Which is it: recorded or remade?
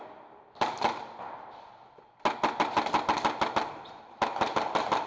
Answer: recorded